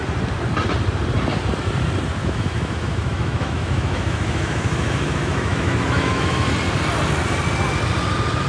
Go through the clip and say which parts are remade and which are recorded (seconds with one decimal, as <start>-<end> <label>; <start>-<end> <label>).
0.0-2.2 recorded; 2.2-6.5 remade; 6.5-8.5 recorded